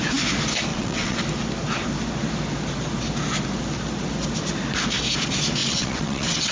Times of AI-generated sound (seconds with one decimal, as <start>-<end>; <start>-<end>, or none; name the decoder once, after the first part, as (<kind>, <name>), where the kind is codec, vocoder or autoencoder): 0.7-1.2 (vocoder, WaveNeXt); 5.6-6.5